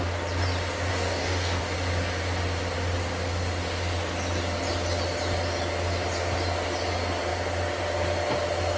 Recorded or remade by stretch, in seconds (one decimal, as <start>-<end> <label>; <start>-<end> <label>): 0.0-0.9 recorded; 0.9-1.6 remade; 1.6-8.8 recorded